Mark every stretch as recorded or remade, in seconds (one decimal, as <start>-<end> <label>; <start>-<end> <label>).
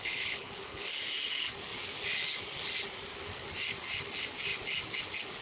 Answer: 0.0-0.9 remade; 0.9-5.4 recorded